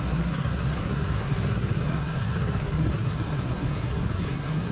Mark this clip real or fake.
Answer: fake